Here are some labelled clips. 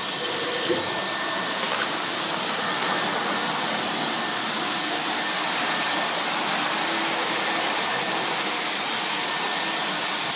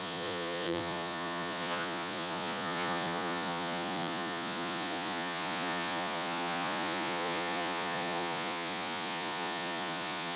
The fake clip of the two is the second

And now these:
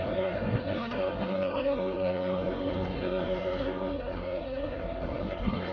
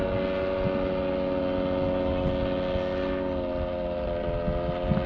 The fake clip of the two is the first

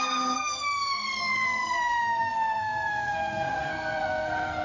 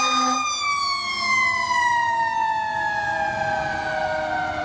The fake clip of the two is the first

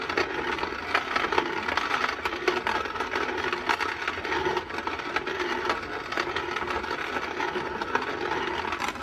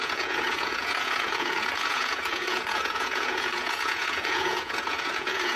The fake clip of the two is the second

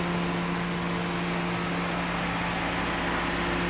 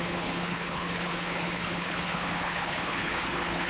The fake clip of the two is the second